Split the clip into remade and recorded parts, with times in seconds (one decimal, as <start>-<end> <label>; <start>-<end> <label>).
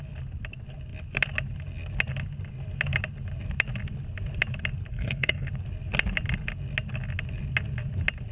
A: 0.0-4.9 recorded; 4.9-5.5 remade; 5.5-8.3 recorded